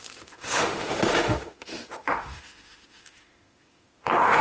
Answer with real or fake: fake